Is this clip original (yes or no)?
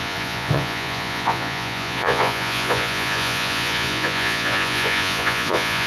no